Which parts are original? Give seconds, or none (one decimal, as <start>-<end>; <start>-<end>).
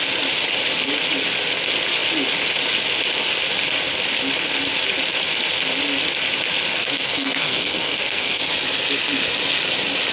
0.0-6.7; 8.5-10.1